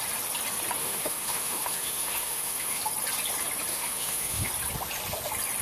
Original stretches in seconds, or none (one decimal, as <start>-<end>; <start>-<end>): 0.0-0.8; 2.8-3.7; 4.5-5.6